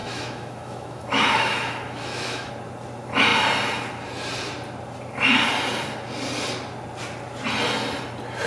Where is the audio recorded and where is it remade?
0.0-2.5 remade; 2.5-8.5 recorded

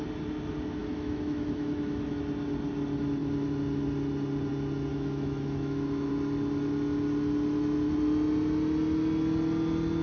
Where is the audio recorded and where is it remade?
0.0-0.8 recorded; 0.8-2.1 remade; 2.1-4.9 recorded; 4.9-6.1 remade; 6.1-10.0 recorded

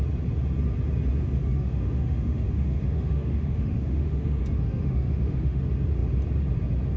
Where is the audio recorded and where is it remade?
0.0-1.4 recorded; 1.4-5.6 remade; 5.6-7.0 recorded

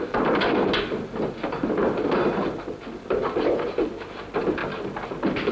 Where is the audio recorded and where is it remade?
0.0-5.5 recorded

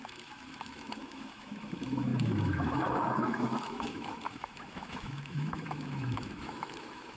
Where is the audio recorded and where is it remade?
0.0-7.2 remade